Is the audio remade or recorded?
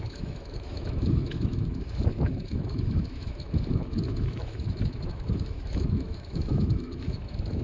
remade